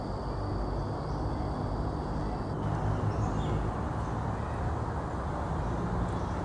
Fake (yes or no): no